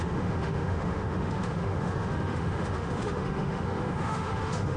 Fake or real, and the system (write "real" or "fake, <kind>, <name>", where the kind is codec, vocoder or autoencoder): fake, autoencoder, DAC-VAE